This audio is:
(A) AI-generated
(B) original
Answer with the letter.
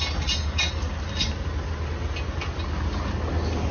B